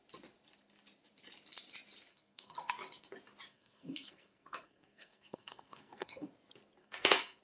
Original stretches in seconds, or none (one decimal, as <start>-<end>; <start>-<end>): 0.0-2.1; 2.7-3.5; 6.3-6.8